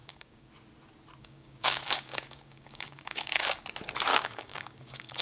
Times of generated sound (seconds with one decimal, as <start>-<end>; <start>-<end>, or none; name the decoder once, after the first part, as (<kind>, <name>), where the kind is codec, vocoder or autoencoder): 0.0-0.5 (codec, DAC); 1.2-3.6; 4.1-5.2

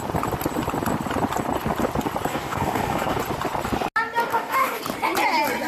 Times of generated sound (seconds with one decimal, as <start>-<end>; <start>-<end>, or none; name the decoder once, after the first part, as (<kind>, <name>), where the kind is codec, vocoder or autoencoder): 2.3-3.2 (codec, DAC); 4.3-4.8

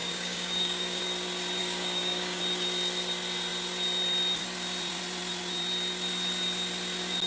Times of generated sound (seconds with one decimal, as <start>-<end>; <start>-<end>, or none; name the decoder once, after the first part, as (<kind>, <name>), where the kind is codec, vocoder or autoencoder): 0.0-1.0 (codec, DAC); 1.6-2.4